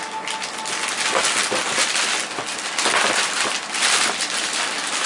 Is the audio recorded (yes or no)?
yes